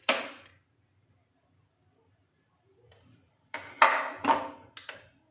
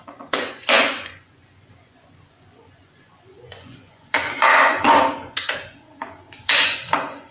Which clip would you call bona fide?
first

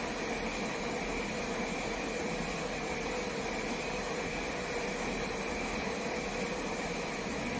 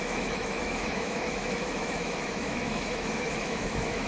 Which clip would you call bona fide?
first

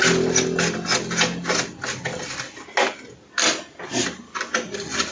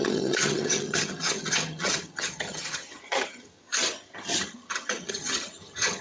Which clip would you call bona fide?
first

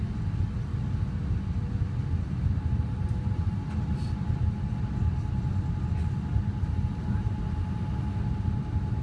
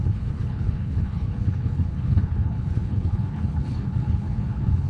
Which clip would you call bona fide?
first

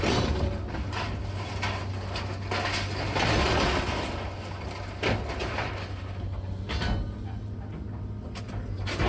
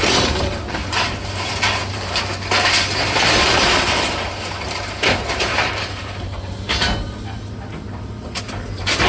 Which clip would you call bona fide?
first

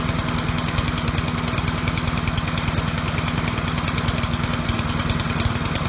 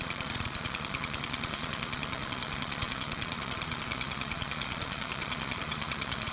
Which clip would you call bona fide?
first